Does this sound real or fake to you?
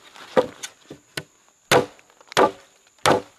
real